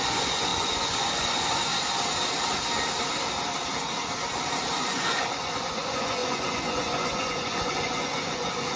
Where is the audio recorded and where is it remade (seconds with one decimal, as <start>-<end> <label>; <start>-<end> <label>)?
0.0-1.7 remade; 1.7-4.7 recorded; 4.7-8.8 remade